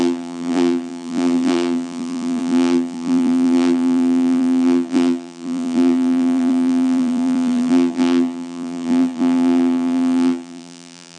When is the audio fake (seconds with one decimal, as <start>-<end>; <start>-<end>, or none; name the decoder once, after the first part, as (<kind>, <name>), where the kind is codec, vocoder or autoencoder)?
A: 0.0-11.2 (vocoder, BigVGAN v2)